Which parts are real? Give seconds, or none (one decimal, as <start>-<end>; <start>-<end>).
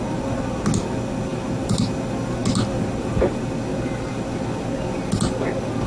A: 0.0-5.9